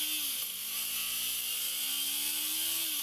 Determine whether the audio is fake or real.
real